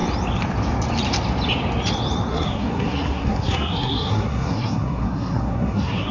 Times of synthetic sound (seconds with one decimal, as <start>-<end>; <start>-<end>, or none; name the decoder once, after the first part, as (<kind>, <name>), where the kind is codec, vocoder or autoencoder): 2.3-6.1 (codec, SNAC)